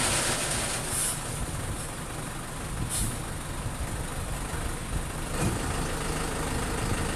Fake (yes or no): no